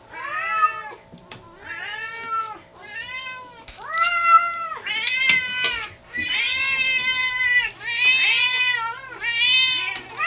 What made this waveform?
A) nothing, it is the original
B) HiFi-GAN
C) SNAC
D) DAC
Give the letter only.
A